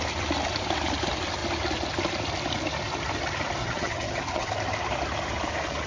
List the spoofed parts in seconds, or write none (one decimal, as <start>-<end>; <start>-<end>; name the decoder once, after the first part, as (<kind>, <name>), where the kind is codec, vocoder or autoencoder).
3.6-4.5 (vocoder, HiFi-GAN)